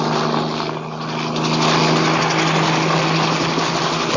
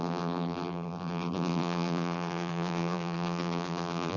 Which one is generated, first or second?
second